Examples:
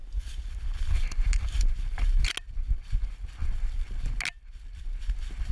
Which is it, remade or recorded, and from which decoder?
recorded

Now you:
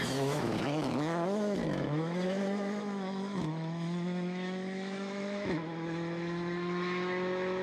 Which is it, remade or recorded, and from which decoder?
remade, autoencoder, DAC-VAE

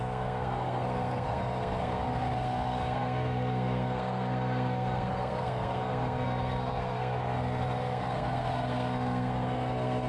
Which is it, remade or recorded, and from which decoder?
remade, codec, SNAC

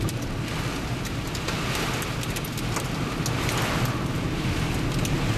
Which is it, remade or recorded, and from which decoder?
recorded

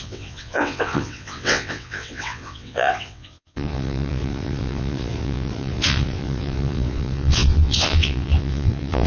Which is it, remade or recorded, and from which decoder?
remade, vocoder, WaveNeXt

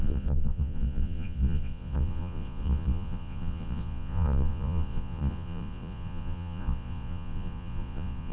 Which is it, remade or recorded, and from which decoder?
remade, vocoder, Vocos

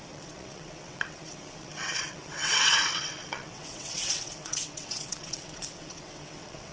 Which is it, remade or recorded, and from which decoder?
remade, vocoder, WaveNeXt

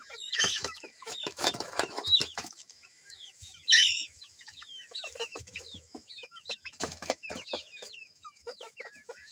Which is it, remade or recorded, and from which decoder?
remade, autoencoder, DAC-VAE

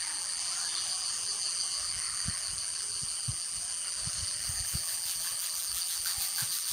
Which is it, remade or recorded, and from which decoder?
remade, vocoder, BigVGAN v2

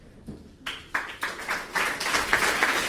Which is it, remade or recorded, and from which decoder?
recorded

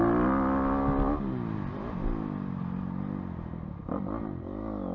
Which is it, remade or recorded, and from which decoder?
recorded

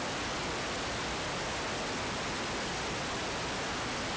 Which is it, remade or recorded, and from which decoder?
recorded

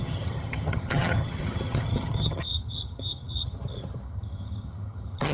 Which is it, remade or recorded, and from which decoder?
remade, vocoder, HiFi-GAN